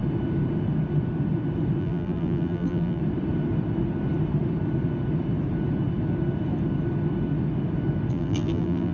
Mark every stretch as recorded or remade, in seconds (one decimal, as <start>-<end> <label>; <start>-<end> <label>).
0.0-1.8 recorded; 1.8-3.0 remade; 3.0-8.1 recorded; 8.1-8.9 remade